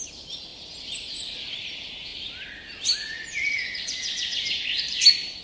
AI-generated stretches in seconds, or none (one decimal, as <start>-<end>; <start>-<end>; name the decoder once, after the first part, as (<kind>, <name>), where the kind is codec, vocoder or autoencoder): none